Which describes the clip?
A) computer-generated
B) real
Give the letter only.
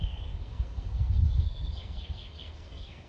A